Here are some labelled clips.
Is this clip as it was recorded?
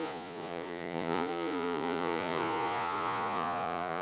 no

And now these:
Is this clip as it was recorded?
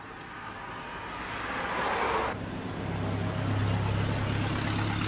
yes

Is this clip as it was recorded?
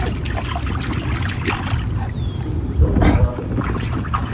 no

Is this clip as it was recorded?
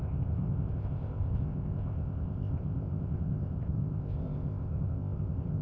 no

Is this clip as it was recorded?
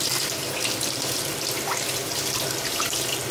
yes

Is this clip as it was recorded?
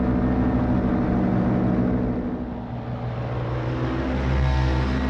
yes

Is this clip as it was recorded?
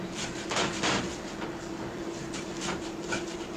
no